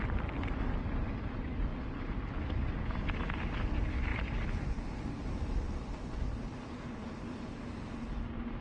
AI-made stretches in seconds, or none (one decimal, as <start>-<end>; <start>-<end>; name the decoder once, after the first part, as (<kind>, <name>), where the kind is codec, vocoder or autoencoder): none